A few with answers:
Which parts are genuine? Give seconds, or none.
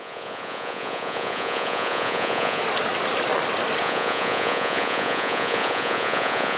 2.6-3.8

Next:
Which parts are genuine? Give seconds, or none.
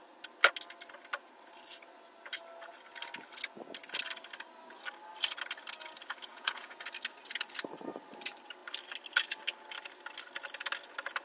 0.0-6.3; 6.8-11.2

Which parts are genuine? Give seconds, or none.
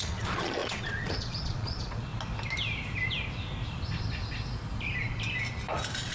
2.1-6.1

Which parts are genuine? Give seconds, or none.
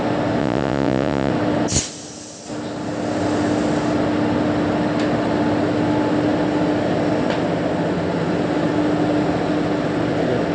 0.0-0.4; 1.3-10.5